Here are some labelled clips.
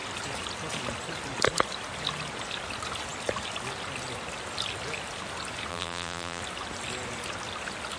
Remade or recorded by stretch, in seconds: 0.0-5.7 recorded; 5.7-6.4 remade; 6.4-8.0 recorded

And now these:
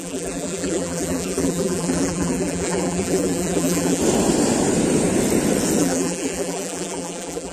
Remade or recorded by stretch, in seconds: 0.0-4.0 remade; 4.0-5.8 recorded; 5.8-7.5 remade

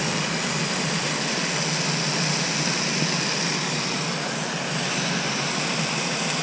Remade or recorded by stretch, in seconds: 0.0-0.5 recorded; 0.5-1.3 remade; 1.3-6.4 recorded

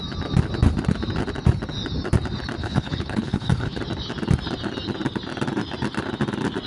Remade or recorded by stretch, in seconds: 0.0-2.6 recorded; 2.6-3.8 remade; 3.8-6.7 recorded

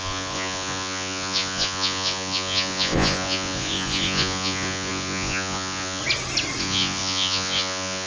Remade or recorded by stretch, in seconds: 0.0-6.0 remade; 6.0-6.6 recorded; 6.6-8.1 remade

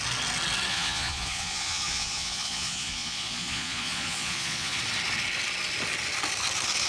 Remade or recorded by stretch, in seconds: 0.0-0.7 recorded; 0.7-4.8 remade; 4.8-6.9 recorded

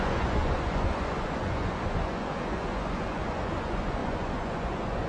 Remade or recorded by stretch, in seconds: 0.0-5.1 remade

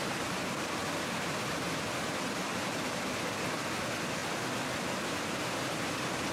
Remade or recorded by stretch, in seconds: 0.0-4.2 remade; 4.2-5.0 recorded; 5.0-6.3 remade